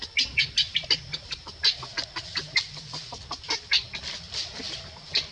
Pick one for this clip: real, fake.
real